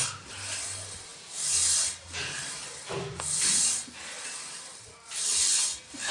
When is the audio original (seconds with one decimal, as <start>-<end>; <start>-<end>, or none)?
0.0-6.1